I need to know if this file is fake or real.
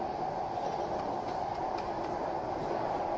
real